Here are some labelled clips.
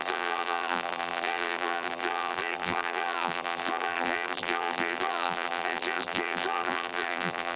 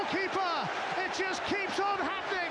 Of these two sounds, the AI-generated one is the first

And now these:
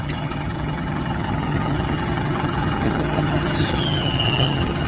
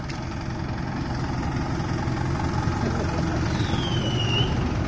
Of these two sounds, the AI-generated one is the first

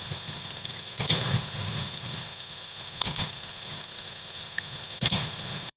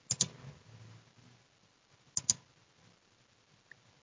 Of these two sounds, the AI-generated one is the first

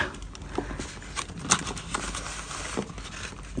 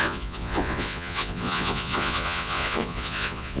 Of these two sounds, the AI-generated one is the second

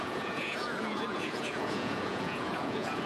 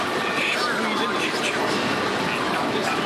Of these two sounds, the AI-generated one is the first